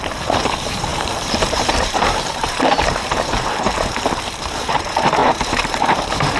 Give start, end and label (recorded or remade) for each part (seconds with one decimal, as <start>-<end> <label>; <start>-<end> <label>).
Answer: 0.0-6.4 remade